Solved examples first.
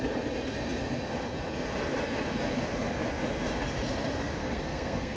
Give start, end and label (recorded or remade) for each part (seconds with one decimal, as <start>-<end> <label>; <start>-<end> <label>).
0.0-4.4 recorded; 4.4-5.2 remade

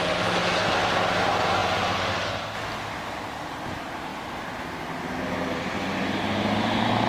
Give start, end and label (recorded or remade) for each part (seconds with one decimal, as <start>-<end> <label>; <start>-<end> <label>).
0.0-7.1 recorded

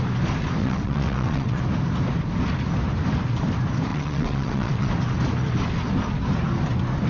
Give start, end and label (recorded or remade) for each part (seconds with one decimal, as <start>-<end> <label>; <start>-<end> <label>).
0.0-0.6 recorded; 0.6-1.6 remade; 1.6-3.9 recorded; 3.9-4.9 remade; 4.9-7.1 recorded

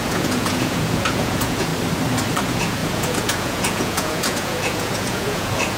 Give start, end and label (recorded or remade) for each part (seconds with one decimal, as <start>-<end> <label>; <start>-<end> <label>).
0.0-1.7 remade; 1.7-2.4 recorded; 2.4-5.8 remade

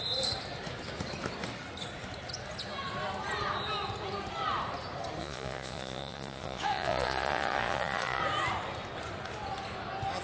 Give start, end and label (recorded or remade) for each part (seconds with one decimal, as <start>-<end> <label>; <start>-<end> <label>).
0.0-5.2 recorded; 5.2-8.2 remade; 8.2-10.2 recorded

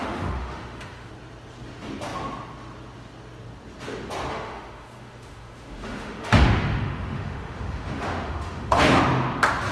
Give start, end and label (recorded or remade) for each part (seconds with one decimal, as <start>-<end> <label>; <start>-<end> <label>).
0.0-1.1 remade; 1.1-4.3 recorded; 4.3-9.0 remade; 9.0-9.7 recorded

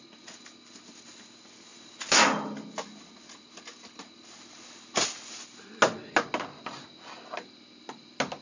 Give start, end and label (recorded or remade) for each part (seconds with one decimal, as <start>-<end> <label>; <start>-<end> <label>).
0.0-8.4 recorded